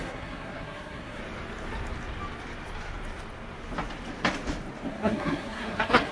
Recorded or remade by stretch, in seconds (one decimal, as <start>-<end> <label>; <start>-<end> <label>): 0.0-1.2 remade; 1.2-4.9 recorded; 4.9-6.1 remade